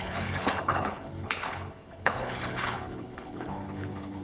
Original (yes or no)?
no